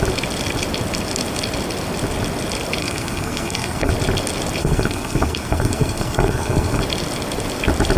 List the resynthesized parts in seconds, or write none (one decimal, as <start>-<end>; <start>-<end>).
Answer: 2.8-3.9; 4.6-6.8